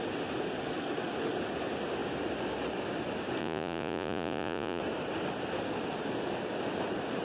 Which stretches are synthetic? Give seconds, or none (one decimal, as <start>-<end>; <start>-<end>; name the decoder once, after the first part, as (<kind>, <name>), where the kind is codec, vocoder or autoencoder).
3.4-4.8 (vocoder, Vocos)